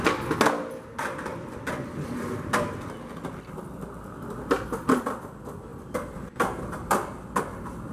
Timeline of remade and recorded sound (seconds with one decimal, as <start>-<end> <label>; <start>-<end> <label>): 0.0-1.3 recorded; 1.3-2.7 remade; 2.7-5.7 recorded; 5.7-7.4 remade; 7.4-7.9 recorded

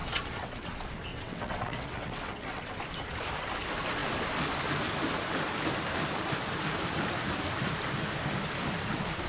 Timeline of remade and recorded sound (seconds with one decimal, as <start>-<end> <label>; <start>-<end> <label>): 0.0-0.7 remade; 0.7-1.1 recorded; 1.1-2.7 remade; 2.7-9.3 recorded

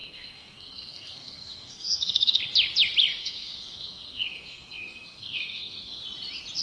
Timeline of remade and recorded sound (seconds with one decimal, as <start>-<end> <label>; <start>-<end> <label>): 0.0-2.4 remade; 2.4-3.2 recorded; 3.2-6.0 remade; 6.0-6.6 recorded

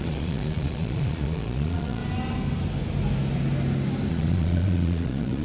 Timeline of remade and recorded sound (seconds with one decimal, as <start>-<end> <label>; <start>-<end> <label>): 0.0-2.0 remade; 2.0-4.1 recorded; 4.1-5.4 remade

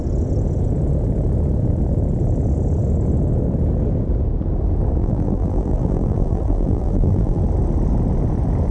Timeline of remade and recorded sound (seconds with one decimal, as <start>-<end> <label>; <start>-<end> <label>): 0.0-5.0 recorded; 5.0-7.4 remade; 7.4-8.7 recorded

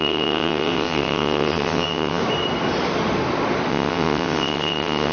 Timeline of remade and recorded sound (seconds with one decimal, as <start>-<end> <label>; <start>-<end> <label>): 0.0-2.2 remade; 2.2-3.7 recorded; 3.7-5.1 remade